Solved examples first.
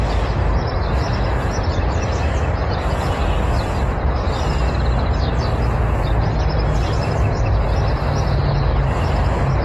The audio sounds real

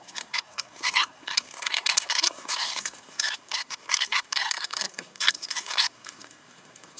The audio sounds fake